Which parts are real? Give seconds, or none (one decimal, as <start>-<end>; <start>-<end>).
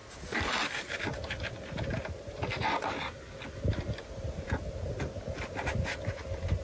0.0-6.6